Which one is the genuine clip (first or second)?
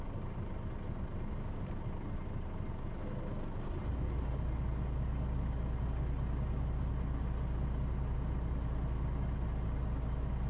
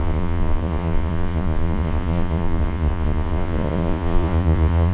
first